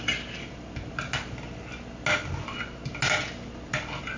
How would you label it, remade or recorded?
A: recorded